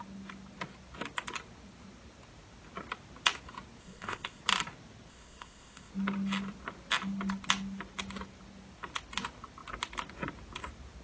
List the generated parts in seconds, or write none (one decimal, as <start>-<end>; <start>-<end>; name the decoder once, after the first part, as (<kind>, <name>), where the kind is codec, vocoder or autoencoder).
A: 3.8-4.4 (codec, ZipCodec); 5.1-5.9